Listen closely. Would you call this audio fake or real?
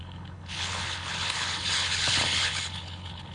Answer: fake